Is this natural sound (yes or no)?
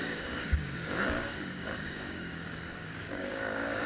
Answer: no